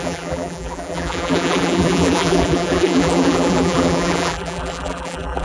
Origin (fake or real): fake